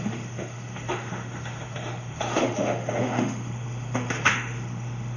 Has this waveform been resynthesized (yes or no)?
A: yes